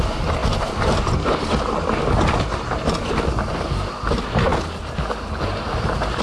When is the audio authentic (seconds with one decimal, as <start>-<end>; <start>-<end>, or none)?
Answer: 0.0-6.2